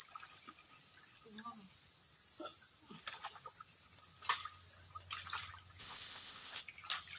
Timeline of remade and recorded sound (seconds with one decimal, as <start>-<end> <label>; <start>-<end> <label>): 0.0-5.8 recorded; 5.8-6.6 remade; 6.6-7.2 recorded